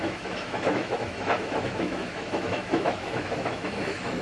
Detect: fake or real fake